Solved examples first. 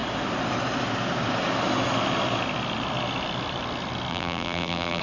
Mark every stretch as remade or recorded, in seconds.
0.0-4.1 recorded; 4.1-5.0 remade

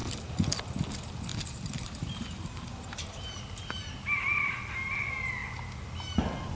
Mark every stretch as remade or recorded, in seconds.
0.0-1.3 recorded; 1.3-2.6 remade; 2.6-6.5 recorded

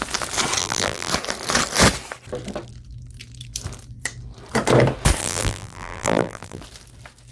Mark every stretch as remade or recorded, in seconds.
0.0-0.6 recorded; 0.6-1.1 remade; 1.1-5.2 recorded; 5.2-6.6 remade; 6.6-7.3 recorded

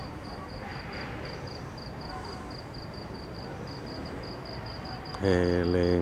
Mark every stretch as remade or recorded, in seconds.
0.0-0.7 recorded; 0.7-3.6 remade; 3.6-6.0 recorded